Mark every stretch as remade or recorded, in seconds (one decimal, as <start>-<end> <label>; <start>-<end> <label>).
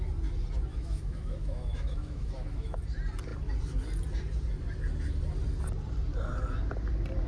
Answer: 0.0-0.7 recorded; 0.7-2.8 remade; 2.8-7.3 recorded